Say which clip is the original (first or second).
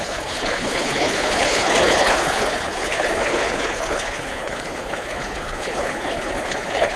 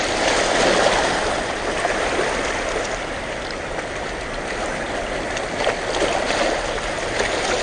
second